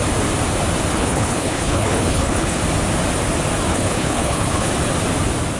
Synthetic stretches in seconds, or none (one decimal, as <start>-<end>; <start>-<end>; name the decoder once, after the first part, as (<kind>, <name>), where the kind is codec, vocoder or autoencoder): 0.9-2.6 (codec, HILCodec); 3.7-4.7